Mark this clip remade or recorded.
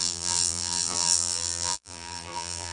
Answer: remade